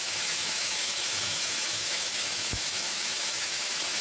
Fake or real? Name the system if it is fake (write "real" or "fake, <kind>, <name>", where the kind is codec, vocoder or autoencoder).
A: fake, autoencoder, DAC-VAE